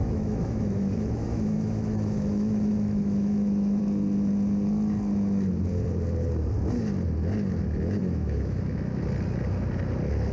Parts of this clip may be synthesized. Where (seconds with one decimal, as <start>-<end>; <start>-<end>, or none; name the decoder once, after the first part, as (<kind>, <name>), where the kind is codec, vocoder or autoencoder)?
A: 0.0-3.8 (autoencoder, DAC-VAE); 8.0-9.0